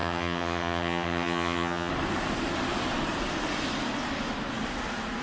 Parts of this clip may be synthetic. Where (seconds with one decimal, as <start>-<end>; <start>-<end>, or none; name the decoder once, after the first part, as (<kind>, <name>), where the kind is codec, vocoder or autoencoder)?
0.0-1.9 (vocoder, HiFi-GAN)